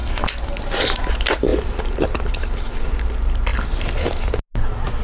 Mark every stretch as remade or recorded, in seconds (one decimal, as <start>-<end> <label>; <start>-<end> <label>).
0.0-5.0 recorded